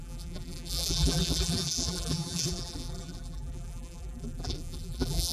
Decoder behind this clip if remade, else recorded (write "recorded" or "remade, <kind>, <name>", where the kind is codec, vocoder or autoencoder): remade, vocoder, BigVGAN v2